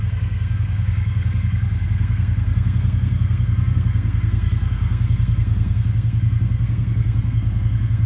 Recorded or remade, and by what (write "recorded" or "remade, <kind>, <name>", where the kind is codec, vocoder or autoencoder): remade, codec, SNAC